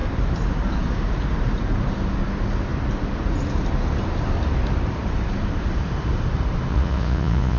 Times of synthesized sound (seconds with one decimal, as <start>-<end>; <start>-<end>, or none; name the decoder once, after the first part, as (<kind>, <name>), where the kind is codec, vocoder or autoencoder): 6.7-7.6 (vocoder, Vocos)